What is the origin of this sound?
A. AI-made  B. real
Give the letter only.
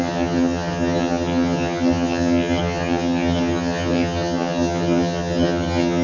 A